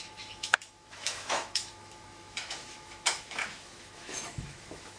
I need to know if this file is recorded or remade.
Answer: remade